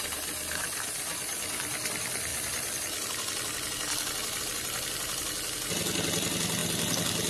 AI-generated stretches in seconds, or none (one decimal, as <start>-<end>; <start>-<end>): none